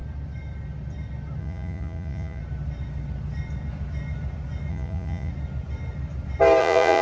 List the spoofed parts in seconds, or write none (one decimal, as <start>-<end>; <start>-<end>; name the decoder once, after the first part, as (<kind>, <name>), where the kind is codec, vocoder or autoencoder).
1.4-2.4 (vocoder, Vocos); 4.7-5.3; 6.6-7.0